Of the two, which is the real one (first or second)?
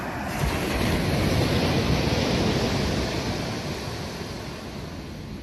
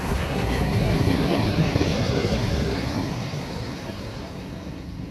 first